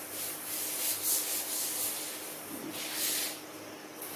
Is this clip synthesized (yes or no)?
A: no